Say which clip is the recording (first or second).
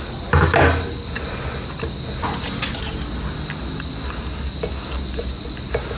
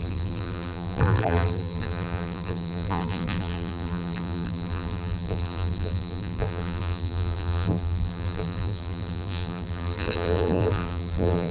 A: first